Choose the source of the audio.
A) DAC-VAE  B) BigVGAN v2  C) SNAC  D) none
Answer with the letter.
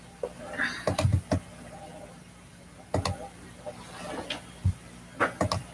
D